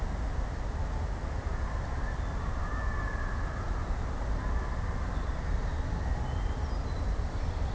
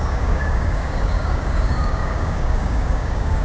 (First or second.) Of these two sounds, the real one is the first